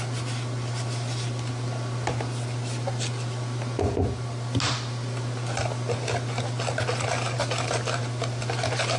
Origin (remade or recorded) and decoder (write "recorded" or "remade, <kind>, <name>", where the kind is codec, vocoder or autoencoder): recorded